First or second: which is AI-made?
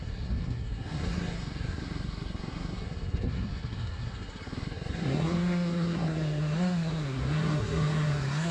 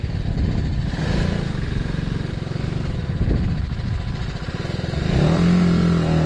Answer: first